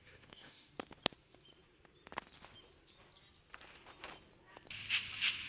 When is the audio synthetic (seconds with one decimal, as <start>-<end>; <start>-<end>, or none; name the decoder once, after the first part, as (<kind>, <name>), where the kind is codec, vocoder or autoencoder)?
0.0-0.7 (autoencoder, DAC-VAE)